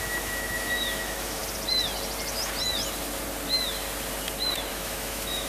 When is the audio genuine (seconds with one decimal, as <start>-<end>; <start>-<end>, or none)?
1.4-4.7